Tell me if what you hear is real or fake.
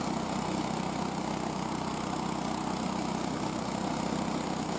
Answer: real